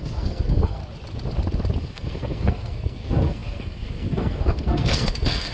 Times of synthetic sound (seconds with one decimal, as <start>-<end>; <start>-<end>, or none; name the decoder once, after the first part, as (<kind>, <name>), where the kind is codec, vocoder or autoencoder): 0.0-0.8 (codec, SNAC); 1.8-5.5